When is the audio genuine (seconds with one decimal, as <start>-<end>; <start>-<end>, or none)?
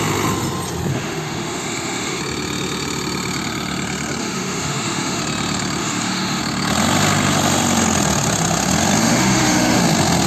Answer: 0.0-0.9; 2.2-4.2; 5.2-5.8; 6.4-9.0; 9.8-10.3